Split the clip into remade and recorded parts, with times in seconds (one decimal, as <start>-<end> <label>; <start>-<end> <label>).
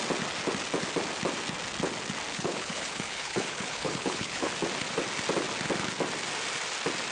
0.0-2.3 recorded; 2.3-4.5 remade; 4.5-7.1 recorded